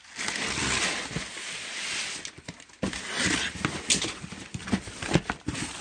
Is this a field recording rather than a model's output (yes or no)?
yes